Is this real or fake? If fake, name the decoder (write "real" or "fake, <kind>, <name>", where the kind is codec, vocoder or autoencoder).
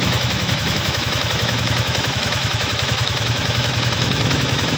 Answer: fake, autoencoder, DAC-VAE